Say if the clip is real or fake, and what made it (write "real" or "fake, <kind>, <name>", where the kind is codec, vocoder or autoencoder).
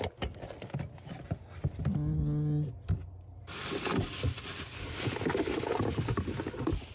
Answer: real